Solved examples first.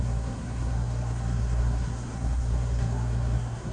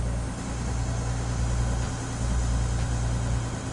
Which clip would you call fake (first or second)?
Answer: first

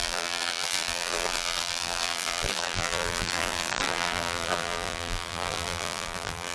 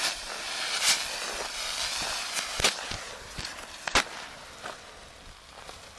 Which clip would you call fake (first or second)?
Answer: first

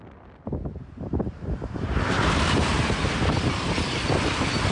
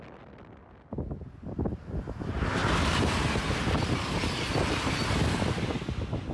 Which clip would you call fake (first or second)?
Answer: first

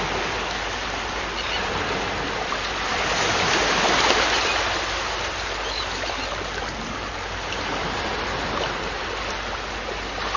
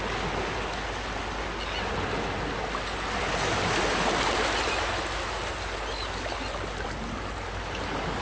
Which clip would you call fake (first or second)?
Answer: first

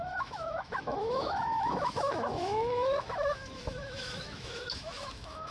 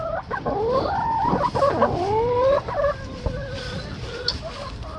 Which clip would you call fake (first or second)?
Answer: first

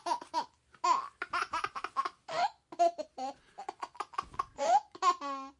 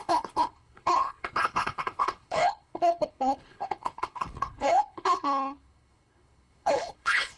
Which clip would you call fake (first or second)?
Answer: second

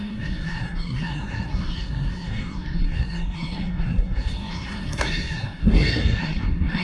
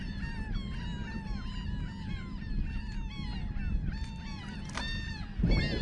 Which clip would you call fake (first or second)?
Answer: first